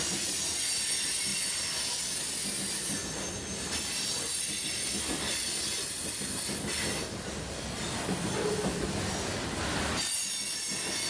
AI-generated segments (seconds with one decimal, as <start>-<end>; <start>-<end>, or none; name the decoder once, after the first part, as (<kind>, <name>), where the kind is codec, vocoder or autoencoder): none